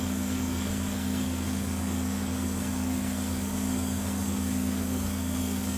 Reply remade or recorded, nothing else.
remade